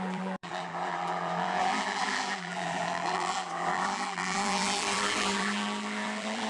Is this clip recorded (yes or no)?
no